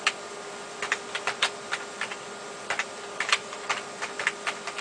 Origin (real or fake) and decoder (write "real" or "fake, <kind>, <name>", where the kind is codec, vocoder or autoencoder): real